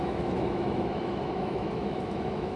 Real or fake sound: fake